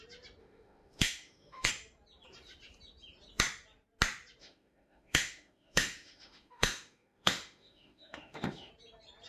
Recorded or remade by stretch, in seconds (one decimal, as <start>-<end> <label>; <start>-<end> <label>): 0.0-0.4 recorded; 0.4-1.7 remade; 1.7-4.4 recorded; 4.4-8.7 remade; 8.7-9.3 recorded